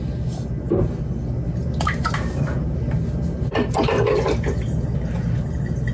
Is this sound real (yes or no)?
yes